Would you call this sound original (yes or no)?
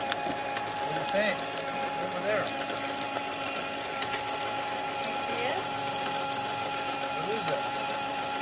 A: yes